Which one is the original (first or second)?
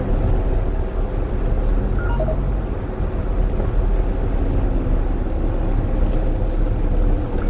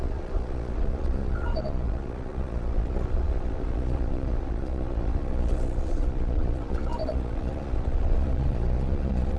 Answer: first